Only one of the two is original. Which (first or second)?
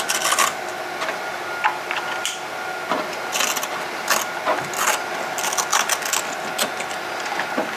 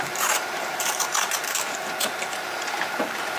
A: first